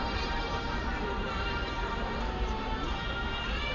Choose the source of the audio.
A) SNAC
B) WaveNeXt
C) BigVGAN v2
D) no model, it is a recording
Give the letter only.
C